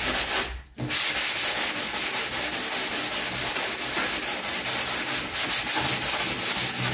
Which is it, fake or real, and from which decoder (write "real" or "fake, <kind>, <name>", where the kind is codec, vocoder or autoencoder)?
real